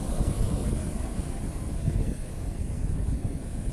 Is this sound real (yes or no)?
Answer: no